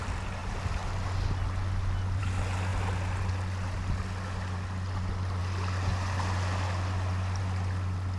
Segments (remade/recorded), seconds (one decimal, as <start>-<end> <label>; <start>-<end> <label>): 0.0-8.2 recorded